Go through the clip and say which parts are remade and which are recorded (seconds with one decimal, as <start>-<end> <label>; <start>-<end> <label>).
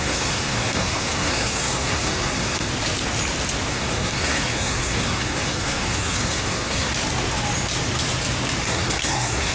0.0-2.7 remade; 2.7-3.7 recorded; 3.7-6.9 remade; 6.9-8.6 recorded; 8.6-9.5 remade